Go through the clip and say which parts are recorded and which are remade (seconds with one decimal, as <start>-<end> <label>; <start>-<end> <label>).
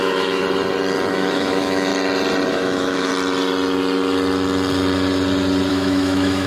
0.0-0.4 remade; 0.4-1.1 recorded; 1.1-1.9 remade; 1.9-2.5 recorded; 2.5-3.1 remade; 3.1-5.7 recorded; 5.7-6.5 remade